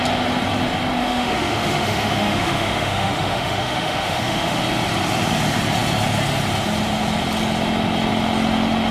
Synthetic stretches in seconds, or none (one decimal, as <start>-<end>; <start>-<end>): 1.0-4.6